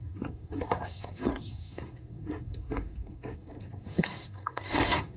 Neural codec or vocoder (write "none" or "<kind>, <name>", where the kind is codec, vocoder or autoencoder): codec, SNAC